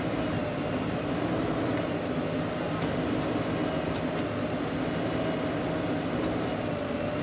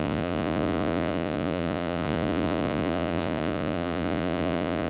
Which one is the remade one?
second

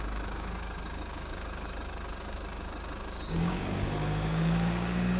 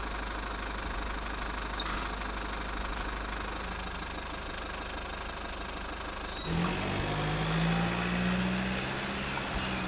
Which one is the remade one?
first